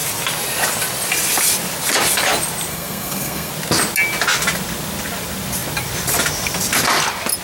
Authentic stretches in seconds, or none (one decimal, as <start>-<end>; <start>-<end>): 0.0-2.7; 3.5-7.4